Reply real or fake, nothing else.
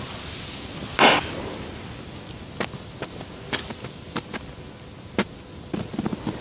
real